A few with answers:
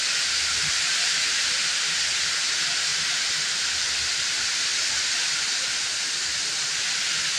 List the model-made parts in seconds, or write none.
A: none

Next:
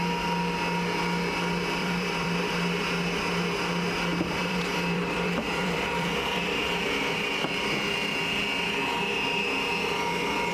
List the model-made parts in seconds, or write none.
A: 1.8-2.5; 4.1-7.4

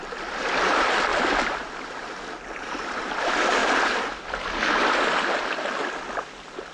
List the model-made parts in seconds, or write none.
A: 0.0-1.1; 2.5-3.6; 4.2-6.7

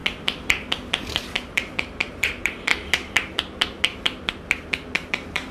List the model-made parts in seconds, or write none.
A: 1.2-2.7; 5.1-5.5

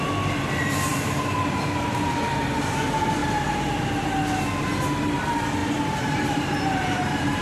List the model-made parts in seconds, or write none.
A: 0.9-1.5; 3.2-3.9; 5.6-7.4

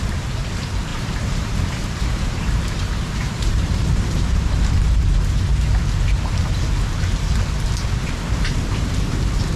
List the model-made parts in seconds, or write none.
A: 0.9-4.9; 8.0-9.2